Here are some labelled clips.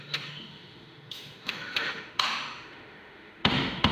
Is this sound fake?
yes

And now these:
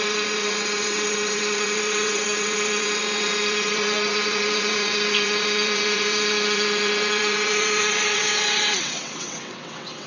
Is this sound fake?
yes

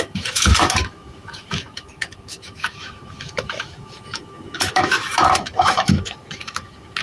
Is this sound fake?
yes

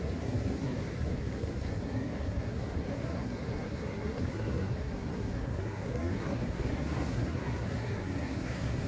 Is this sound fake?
yes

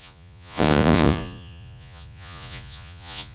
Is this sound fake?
yes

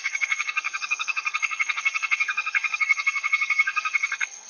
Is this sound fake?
yes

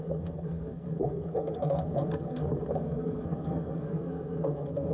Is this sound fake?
yes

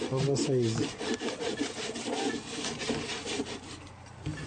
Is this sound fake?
no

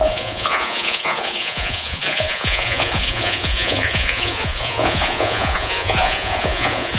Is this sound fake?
yes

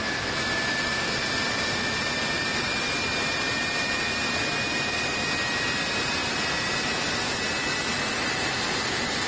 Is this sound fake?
no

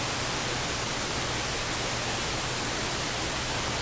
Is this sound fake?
no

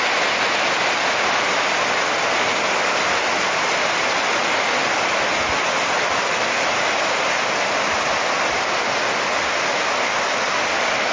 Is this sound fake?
no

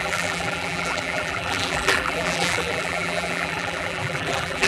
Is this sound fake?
yes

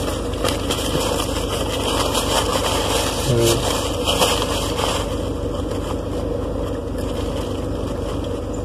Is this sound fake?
no